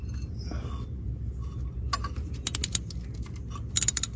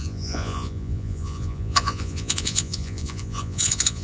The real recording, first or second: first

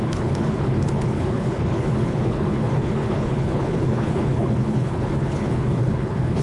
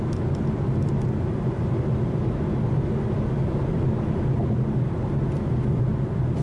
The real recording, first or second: second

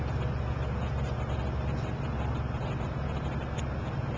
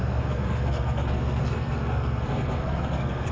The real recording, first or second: first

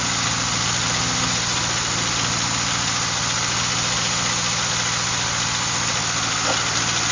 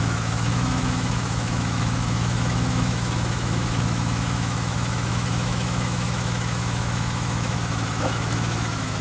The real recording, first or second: first